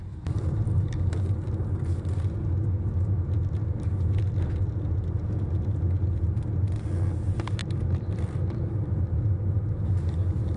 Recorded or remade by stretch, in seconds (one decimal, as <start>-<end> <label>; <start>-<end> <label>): 0.0-10.6 recorded